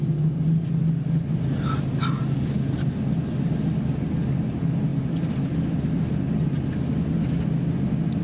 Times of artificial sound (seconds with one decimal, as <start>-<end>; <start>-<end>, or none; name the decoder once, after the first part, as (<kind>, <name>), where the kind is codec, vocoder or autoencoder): none